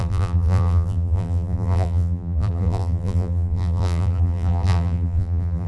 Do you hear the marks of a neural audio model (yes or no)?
yes